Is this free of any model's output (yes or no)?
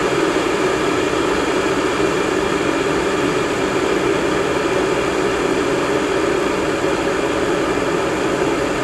yes